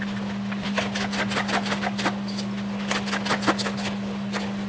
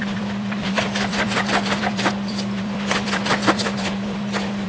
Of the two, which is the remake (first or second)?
second